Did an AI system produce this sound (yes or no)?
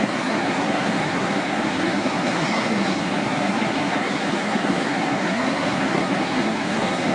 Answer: yes